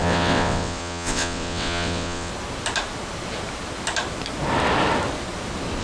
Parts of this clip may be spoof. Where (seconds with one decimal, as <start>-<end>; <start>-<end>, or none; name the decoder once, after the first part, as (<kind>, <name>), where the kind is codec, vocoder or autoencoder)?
0.0-2.3 (vocoder, WaveNeXt)